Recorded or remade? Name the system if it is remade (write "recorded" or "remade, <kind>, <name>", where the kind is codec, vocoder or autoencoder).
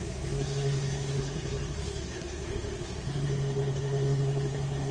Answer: remade, codec, SNAC